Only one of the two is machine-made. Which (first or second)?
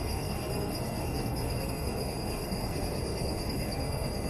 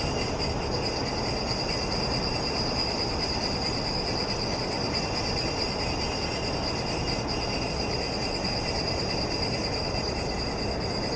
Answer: first